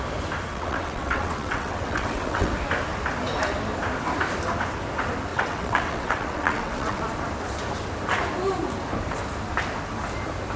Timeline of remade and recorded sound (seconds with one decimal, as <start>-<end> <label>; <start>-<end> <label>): 0.0-0.5 recorded; 0.5-2.5 remade; 2.5-5.3 recorded; 5.3-7.0 remade; 7.0-10.6 recorded